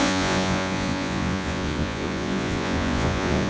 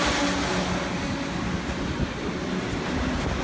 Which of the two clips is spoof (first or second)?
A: first